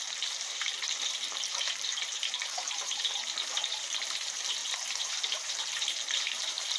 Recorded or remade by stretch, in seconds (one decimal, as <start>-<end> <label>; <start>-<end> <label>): 0.0-6.8 remade